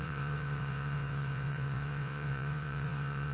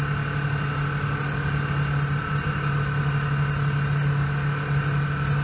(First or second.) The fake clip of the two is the first